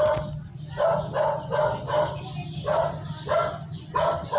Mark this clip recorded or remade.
remade